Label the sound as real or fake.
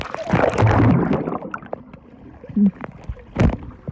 real